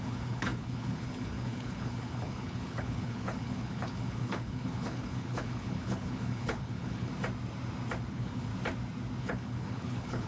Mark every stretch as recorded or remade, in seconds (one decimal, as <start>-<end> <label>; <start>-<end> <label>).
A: 0.0-7.1 remade; 7.1-8.1 recorded; 8.1-8.5 remade; 8.5-9.2 recorded; 9.2-10.3 remade